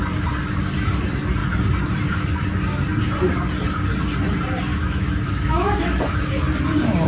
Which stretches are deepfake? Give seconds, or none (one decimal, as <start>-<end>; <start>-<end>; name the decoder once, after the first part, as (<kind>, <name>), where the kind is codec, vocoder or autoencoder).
4.7-6.0 (autoencoder, DAC-VAE)